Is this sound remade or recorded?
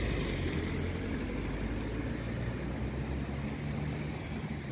recorded